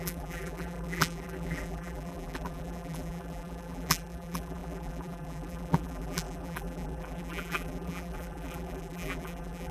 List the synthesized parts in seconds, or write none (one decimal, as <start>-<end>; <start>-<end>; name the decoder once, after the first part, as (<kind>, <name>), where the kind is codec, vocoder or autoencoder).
0.0-9.7 (vocoder, BigVGAN v2)